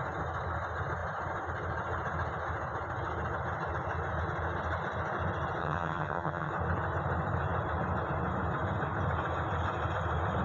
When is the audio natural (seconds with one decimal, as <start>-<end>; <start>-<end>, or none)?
0.0-5.6; 6.5-10.4